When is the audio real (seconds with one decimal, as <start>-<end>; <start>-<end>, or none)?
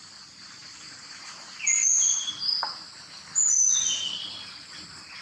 0.0-5.2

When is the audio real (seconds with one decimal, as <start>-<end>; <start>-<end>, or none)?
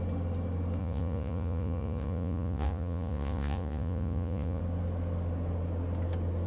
0.0-0.8; 4.6-6.5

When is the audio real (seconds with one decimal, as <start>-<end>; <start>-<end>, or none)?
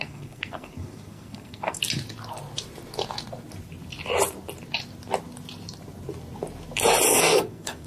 1.8-7.1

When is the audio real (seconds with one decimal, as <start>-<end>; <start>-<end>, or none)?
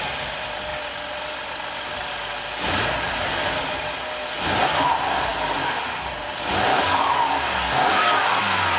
0.0-6.7; 8.4-8.8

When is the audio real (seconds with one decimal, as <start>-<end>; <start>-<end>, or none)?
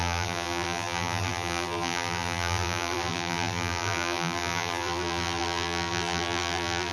none